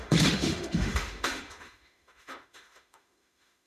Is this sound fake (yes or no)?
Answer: yes